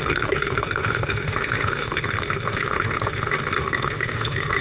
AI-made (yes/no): yes